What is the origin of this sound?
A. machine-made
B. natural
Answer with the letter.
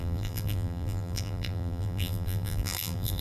A